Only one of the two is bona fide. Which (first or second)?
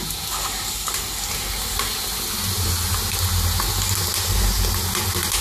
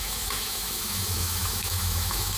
first